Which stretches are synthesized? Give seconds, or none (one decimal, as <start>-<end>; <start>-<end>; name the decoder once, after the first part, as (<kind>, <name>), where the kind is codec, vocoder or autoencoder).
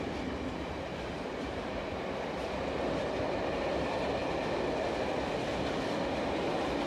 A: none